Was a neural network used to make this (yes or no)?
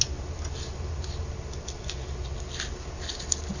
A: no